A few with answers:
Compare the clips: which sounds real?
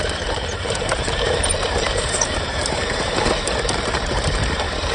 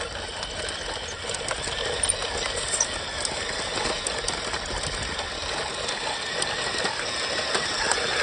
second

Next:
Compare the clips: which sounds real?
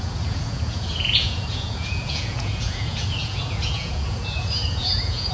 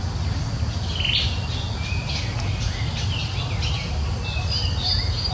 second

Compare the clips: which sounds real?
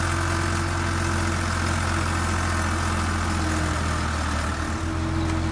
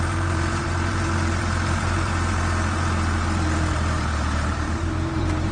first